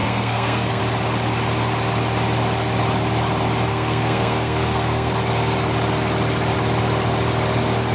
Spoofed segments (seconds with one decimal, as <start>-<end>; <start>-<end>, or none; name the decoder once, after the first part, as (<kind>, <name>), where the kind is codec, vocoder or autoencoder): 0.0-0.8 (codec, SNAC); 3.7-5.1